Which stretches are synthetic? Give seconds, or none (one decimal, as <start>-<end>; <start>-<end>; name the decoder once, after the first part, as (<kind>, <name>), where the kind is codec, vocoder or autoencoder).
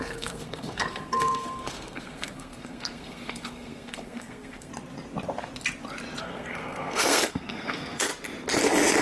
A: 0.0-4.7 (codec, SNAC); 6.2-8.1